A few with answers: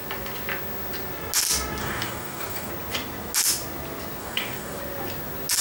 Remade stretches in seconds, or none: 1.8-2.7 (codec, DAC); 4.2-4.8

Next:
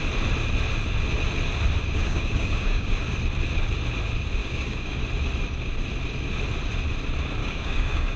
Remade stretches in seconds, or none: 2.0-3.0 (codec, DAC); 4.4-5.0; 7.4-8.2